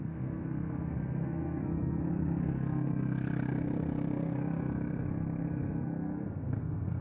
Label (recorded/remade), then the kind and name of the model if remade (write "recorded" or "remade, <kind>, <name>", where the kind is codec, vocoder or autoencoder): remade, codec, SNAC